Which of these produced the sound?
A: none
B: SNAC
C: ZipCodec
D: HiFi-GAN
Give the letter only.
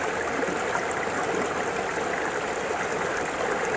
A